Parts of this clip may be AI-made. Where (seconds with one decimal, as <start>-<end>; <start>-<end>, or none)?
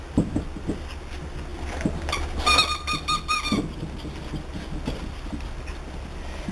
none